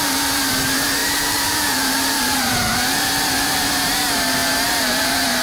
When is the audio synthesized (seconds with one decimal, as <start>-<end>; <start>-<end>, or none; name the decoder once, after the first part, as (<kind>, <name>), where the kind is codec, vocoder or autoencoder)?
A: 0.0-5.4 (vocoder, BigVGAN v2)